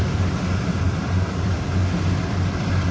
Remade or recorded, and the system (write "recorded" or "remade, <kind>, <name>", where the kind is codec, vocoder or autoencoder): remade, vocoder, BigVGAN v2